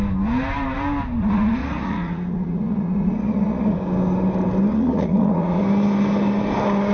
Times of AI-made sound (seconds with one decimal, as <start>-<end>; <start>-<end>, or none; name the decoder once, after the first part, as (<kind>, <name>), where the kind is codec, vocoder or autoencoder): 1.6-3.7 (vocoder, Vocos); 4.7-5.6